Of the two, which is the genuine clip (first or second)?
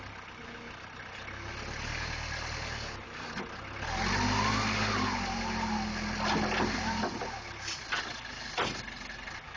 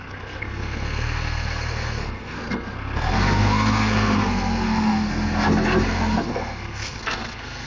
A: first